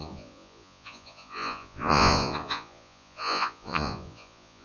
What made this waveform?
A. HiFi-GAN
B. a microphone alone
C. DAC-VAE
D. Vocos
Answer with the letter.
D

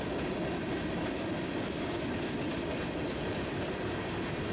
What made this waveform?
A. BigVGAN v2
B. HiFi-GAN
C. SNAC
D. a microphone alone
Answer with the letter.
D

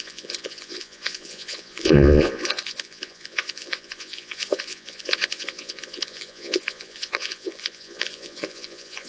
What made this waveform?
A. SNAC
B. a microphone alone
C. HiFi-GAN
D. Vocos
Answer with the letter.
D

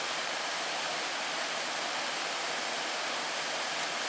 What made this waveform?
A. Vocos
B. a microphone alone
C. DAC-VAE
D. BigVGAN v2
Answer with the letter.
B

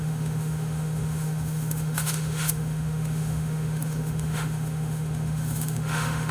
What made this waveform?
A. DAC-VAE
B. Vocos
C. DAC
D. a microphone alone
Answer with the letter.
A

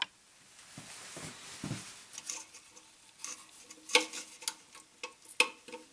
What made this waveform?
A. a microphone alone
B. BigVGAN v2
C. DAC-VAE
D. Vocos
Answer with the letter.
A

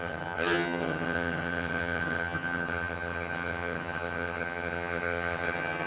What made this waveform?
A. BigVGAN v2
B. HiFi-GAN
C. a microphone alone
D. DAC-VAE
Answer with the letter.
B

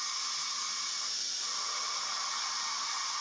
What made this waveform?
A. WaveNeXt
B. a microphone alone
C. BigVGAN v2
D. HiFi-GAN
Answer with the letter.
B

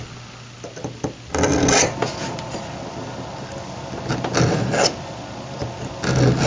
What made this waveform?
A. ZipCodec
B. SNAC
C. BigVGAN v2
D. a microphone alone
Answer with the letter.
D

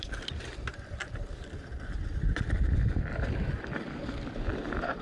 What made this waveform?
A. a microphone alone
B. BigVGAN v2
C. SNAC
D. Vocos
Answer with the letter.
B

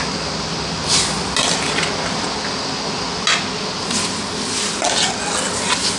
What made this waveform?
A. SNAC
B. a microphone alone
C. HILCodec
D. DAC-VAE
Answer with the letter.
B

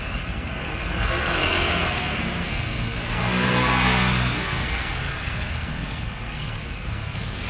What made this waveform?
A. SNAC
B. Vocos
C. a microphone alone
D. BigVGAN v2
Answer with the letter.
A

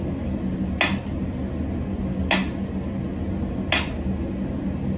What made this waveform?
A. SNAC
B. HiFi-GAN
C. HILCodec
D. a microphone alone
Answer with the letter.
D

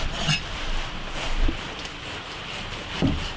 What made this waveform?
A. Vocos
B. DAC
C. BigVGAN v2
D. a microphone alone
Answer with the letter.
D